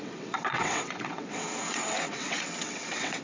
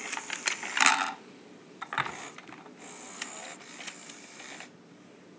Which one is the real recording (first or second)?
second